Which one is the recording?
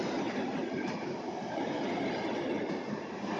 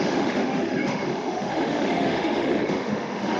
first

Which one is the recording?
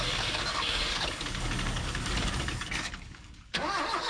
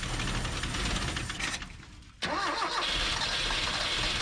second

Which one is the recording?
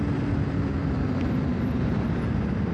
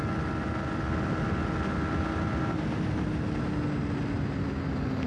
second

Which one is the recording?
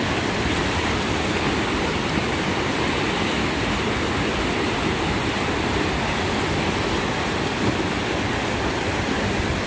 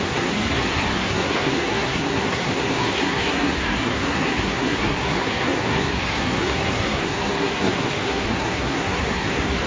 first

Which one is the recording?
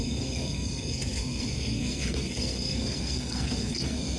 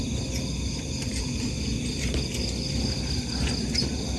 second